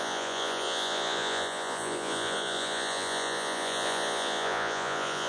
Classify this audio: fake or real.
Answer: fake